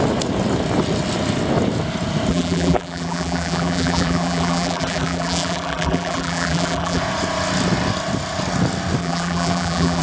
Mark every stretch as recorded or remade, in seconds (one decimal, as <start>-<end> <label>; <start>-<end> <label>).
0.0-2.3 recorded; 2.3-7.0 remade; 7.0-9.0 recorded; 9.0-10.0 remade